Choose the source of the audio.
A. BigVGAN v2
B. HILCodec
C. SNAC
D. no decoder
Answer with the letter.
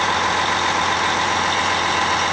D